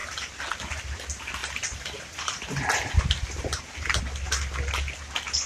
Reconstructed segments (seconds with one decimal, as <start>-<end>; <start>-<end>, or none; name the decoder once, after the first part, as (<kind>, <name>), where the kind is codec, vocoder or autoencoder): 1.4-4.0 (vocoder, BigVGAN v2)